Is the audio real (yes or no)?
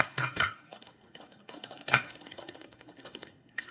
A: no